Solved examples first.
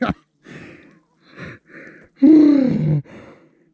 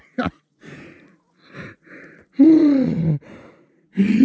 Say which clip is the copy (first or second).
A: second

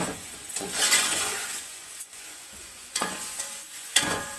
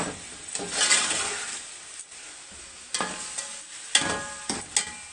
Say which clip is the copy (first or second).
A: first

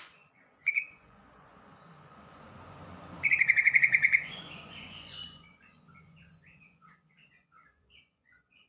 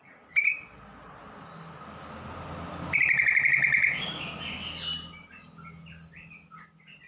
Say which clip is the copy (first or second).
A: first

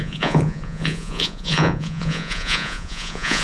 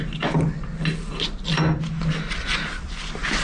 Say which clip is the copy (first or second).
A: first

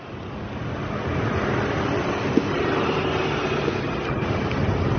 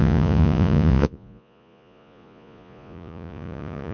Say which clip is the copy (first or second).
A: second